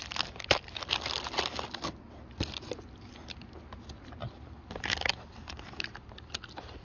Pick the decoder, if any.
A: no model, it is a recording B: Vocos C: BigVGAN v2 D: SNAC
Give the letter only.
A